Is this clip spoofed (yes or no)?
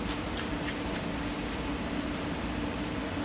yes